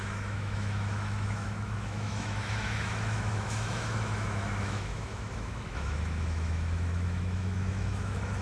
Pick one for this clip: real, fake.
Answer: fake